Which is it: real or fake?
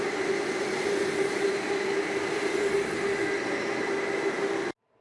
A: real